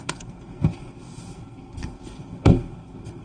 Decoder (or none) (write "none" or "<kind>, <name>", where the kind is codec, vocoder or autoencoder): codec, SNAC